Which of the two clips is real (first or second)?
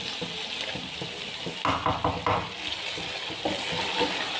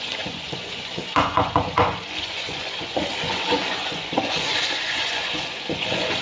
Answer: first